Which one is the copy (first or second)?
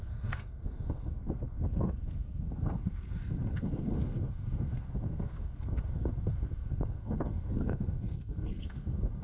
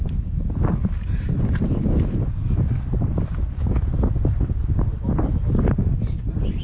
first